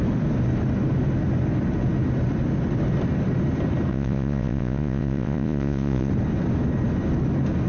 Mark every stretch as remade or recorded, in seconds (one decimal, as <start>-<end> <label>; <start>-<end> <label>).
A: 0.0-3.9 recorded; 3.9-6.1 remade; 6.1-7.7 recorded